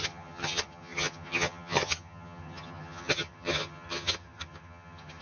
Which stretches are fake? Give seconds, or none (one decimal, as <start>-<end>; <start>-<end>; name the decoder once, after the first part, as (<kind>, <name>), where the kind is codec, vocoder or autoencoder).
0.0-5.2 (vocoder, HiFi-GAN)